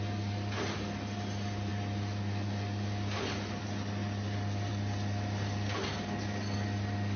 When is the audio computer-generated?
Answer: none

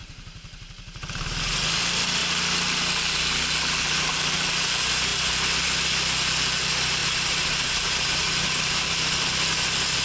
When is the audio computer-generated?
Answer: 0.0-1.5; 7.0-9.1

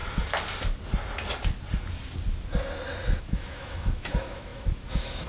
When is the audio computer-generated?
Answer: 3.2-5.3

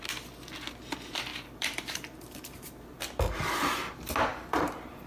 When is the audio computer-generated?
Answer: 1.3-3.0; 4.3-5.1

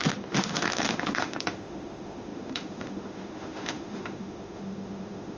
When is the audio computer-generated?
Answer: 0.0-5.4